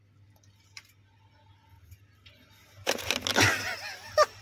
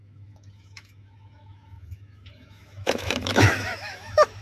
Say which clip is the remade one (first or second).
second